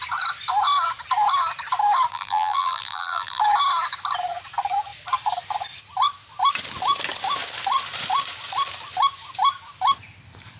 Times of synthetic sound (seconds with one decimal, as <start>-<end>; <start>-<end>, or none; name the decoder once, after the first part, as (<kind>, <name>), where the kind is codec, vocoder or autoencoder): 2.1-3.4 (vocoder, BigVGAN v2)